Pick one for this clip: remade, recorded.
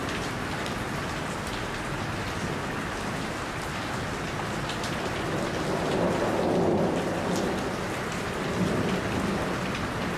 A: recorded